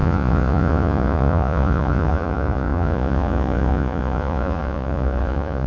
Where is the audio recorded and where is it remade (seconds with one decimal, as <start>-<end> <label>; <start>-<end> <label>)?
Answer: 0.0-5.7 remade